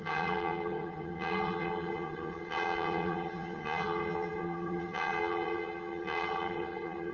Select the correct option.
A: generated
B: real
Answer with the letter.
A